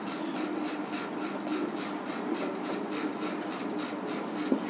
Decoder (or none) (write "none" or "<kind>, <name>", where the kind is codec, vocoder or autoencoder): none